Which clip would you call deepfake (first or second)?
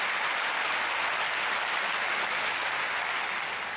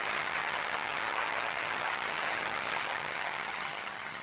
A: second